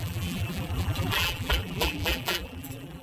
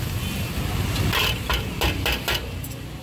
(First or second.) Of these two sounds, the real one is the second